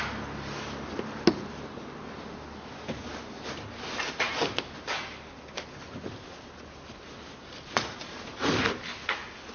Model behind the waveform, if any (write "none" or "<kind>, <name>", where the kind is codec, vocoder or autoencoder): none